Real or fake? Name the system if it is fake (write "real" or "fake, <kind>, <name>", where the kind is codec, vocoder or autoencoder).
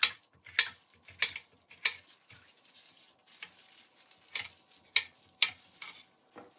real